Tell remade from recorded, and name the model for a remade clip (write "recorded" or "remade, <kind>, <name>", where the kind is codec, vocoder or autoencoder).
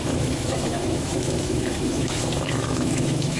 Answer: remade, autoencoder, DAC-VAE